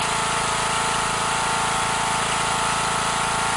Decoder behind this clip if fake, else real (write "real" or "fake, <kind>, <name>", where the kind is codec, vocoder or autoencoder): real